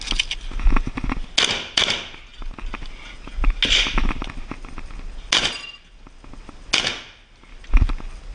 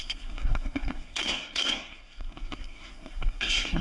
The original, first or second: first